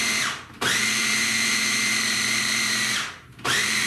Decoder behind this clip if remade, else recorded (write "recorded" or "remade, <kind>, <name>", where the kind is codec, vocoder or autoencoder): remade, vocoder, BigVGAN v2